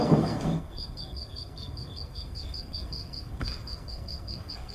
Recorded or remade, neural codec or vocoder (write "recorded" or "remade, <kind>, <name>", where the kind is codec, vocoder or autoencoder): remade, codec, SNAC